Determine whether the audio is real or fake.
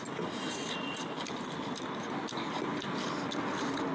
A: real